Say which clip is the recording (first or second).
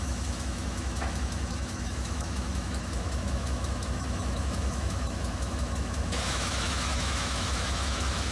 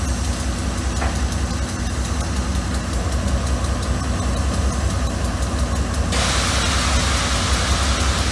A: second